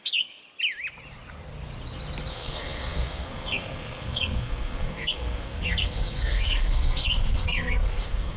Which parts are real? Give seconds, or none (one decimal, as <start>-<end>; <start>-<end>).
0.4-2.3